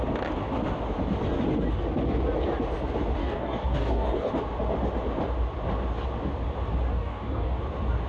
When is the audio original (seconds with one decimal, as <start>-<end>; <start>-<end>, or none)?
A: 0.0-3.2; 4.3-6.9; 7.6-8.1